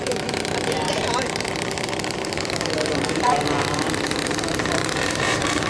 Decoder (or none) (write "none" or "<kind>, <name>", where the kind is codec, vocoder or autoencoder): vocoder, BigVGAN v2